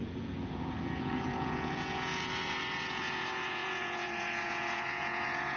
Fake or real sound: fake